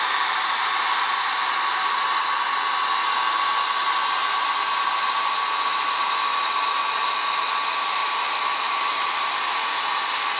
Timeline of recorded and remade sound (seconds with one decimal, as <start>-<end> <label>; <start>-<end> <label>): 0.0-8.0 recorded; 8.0-9.8 remade; 9.8-10.4 recorded